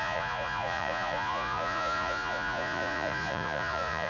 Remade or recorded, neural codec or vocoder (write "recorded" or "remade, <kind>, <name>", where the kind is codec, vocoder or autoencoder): remade, vocoder, Vocos